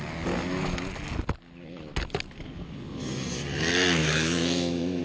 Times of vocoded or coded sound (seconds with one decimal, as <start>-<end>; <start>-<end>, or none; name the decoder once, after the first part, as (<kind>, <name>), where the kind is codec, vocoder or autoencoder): 4.0-5.0 (autoencoder, DAC-VAE)